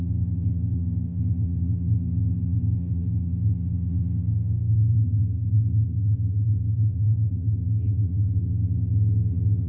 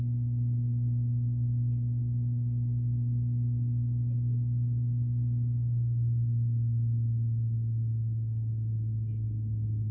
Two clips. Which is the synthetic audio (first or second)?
first